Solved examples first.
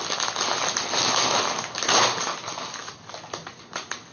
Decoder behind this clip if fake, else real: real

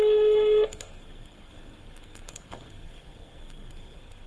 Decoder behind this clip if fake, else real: fake, codec, SNAC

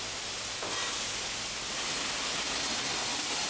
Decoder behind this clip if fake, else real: real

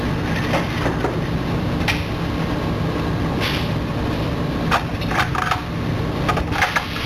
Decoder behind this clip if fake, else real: real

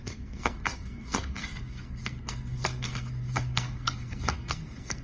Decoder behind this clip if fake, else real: fake, codec, SNAC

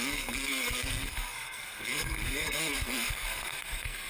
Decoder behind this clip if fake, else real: fake, codec, SNAC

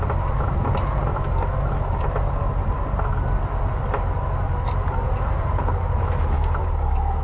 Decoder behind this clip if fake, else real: real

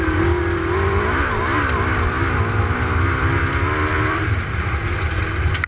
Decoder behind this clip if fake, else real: real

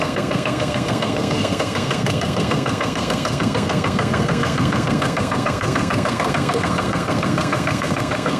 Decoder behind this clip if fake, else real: fake, codec, SNAC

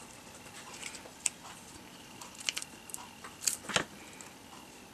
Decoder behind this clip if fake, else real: real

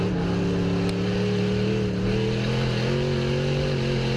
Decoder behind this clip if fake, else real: real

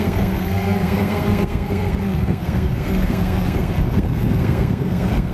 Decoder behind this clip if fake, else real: fake, codec, SNAC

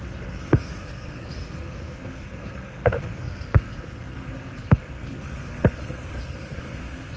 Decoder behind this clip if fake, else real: fake, codec, SNAC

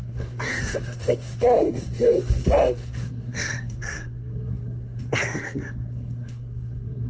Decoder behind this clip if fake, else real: fake, codec, SNAC